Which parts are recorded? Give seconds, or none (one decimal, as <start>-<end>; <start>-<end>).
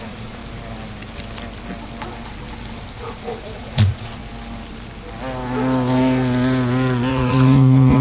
0.4-2.9; 4.2-7.1